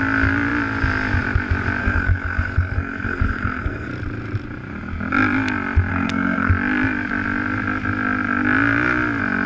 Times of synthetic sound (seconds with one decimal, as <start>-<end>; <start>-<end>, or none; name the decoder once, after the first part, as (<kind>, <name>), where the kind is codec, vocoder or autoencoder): 1.8-3.9 (codec, SNAC); 5.9-6.5